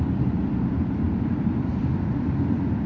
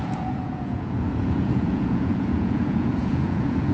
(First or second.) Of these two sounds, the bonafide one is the first